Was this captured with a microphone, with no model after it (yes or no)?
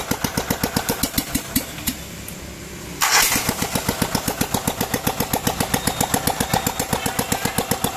yes